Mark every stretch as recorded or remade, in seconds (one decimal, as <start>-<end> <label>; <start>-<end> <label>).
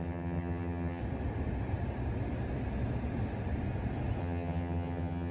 0.0-1.0 remade; 1.0-4.2 recorded; 4.2-5.3 remade